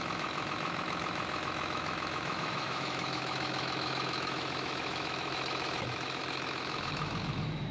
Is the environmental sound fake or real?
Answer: fake